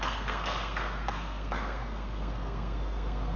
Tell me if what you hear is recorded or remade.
remade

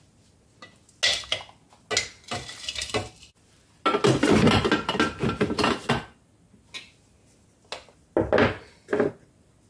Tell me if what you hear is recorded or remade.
recorded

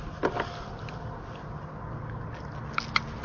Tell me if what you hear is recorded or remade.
recorded